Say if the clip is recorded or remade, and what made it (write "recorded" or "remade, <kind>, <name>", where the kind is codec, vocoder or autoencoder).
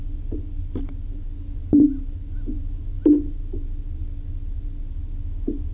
recorded